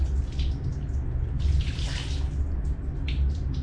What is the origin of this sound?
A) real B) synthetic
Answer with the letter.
A